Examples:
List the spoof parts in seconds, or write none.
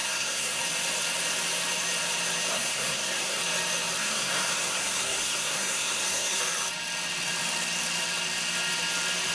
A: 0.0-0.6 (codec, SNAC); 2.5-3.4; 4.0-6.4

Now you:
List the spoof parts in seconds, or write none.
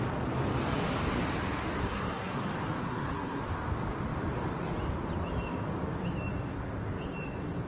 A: 1.8-2.4 (codec, SNAC); 2.8-3.4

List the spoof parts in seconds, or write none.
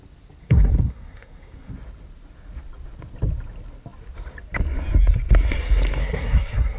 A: 0.4-1.7 (codec, SNAC); 6.0-6.8